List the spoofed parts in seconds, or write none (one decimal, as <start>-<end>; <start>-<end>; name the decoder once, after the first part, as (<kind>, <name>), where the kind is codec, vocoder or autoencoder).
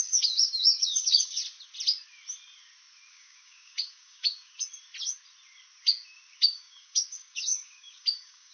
0.0-1.4 (codec, DAC); 3.1-4.5; 6.4-8.5